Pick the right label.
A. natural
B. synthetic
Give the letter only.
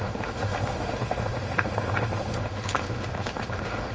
B